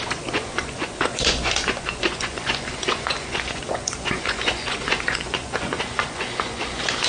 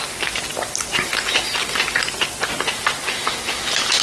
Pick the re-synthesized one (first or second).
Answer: first